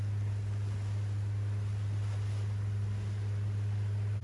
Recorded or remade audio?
recorded